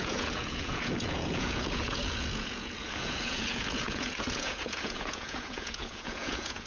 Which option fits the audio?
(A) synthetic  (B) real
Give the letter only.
A